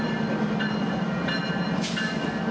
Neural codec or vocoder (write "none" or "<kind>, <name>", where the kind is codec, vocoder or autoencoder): none